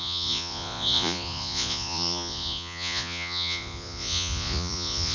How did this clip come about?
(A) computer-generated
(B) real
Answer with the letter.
A